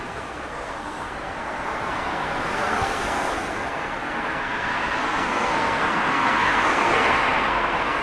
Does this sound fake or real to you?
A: fake